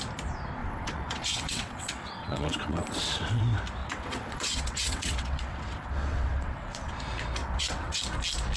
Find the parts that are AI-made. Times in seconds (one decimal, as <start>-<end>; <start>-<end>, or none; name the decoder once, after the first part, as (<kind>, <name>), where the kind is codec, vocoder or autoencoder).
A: 0.6-3.4 (vocoder, WaveNeXt); 3.8-6.9; 7.4-8.0